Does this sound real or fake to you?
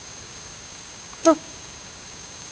fake